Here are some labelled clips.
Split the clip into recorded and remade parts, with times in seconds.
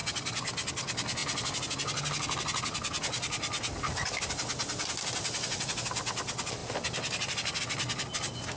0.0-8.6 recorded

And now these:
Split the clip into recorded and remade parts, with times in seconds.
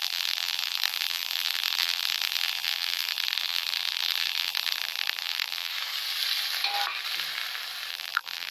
0.0-5.7 remade; 5.7-7.9 recorded; 7.9-8.5 remade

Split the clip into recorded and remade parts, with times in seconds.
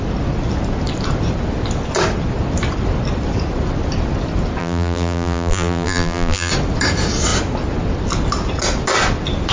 0.0-4.6 recorded; 4.6-6.5 remade; 6.5-9.5 recorded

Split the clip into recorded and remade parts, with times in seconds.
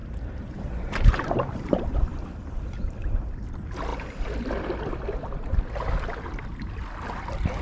0.0-2.3 remade; 2.3-7.6 recorded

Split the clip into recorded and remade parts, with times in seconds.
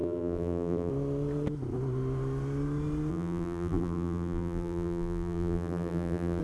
0.0-0.9 remade; 0.9-3.1 recorded; 3.1-6.4 remade